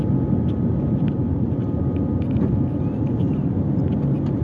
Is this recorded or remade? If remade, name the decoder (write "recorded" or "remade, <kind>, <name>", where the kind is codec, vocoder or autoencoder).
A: recorded